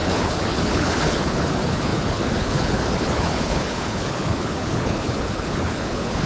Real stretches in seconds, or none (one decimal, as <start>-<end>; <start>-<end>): none